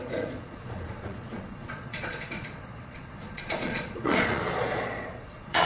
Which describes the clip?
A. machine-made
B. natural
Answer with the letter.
A